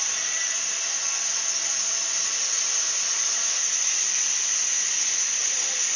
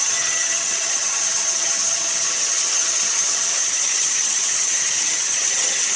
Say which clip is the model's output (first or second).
second